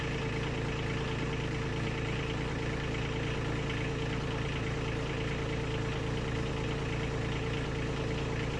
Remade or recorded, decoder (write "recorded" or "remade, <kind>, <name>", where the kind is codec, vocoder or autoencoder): recorded